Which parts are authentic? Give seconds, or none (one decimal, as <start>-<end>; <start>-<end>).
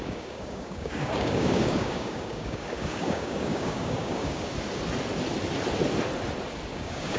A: 4.5-6.7